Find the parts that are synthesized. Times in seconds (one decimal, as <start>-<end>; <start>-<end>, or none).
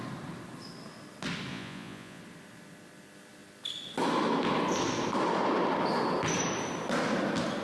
1.5-2.2